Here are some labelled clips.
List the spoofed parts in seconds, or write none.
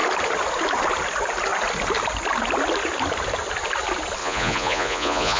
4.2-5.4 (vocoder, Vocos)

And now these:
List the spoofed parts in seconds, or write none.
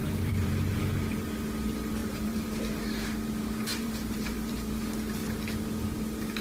0.0-0.8 (vocoder, BigVGAN v2); 2.0-2.6; 3.7-4.7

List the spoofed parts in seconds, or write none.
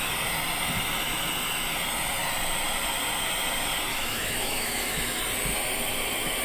3.9-5.2 (autoencoder, DAC-VAE)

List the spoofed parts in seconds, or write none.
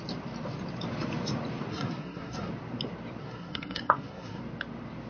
1.7-2.5 (codec, SNAC); 3.2-4.4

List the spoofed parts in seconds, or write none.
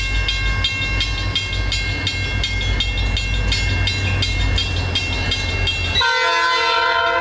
none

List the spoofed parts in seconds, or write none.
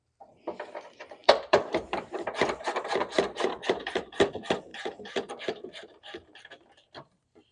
1.2-4.1 (vocoder, BigVGAN v2); 4.7-6.4